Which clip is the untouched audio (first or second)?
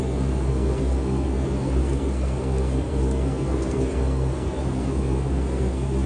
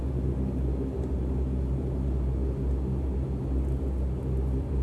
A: second